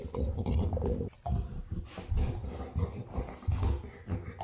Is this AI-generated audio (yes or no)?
no